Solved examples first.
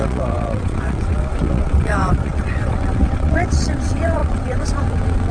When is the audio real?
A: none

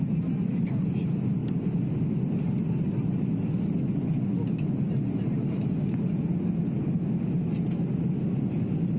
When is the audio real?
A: 0.0-9.0